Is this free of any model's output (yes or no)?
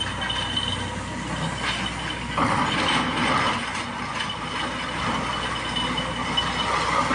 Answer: yes